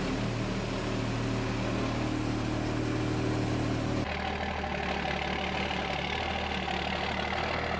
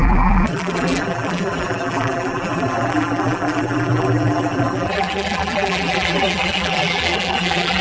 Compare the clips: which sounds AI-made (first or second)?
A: second